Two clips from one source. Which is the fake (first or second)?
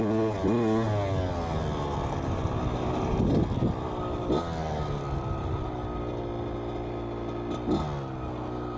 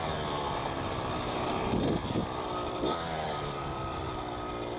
second